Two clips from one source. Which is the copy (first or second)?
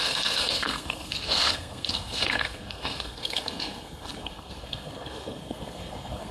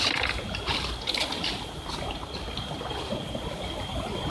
first